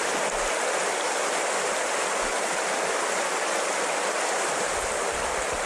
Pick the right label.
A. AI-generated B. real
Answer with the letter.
B